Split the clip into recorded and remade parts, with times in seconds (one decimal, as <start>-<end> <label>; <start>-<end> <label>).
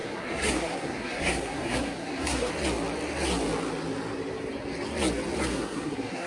0.0-2.5 remade; 2.5-5.5 recorded; 5.5-6.3 remade